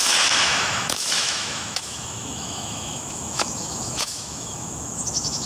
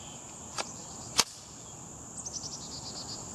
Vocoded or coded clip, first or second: first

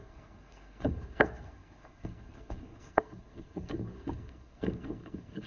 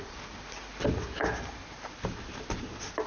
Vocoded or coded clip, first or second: first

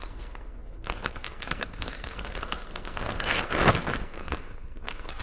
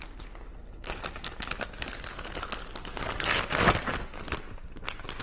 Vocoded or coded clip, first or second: first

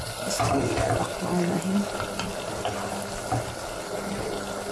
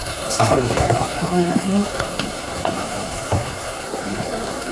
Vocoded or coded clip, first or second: second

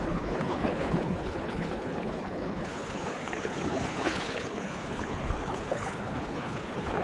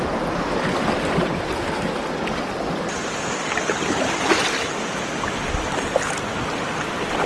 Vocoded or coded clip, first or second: first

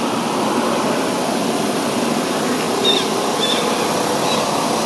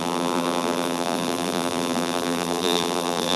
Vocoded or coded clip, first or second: second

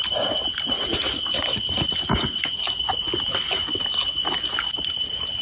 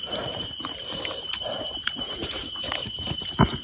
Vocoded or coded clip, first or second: second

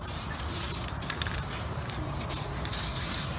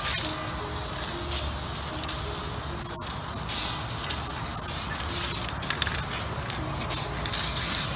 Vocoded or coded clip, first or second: first